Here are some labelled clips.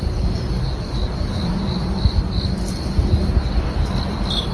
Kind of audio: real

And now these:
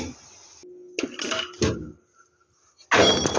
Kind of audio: real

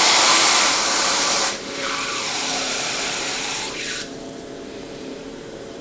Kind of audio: fake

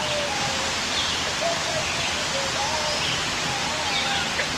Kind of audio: real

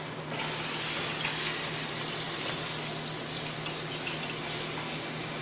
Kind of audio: real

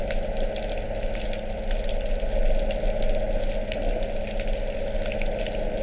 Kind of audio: real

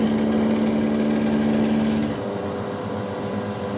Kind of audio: real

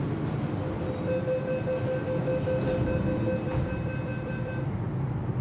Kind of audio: real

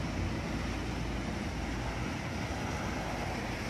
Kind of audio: real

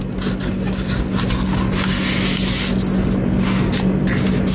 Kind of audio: real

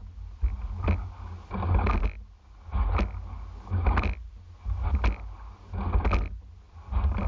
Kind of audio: real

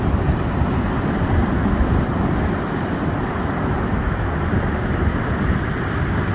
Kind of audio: real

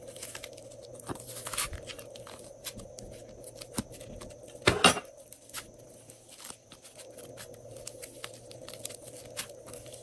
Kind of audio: real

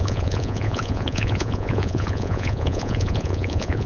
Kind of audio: fake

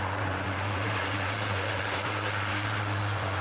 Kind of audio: fake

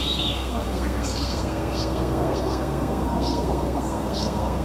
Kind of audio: fake